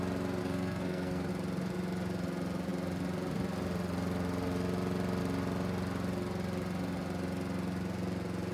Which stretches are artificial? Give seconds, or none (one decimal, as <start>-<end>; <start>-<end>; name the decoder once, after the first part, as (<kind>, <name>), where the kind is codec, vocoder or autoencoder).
0.4-1.3 (codec, SNAC)